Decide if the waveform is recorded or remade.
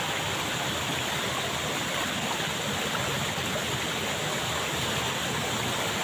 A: remade